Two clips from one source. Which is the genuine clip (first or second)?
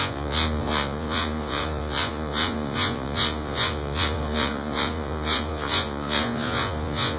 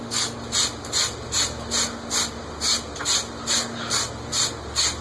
second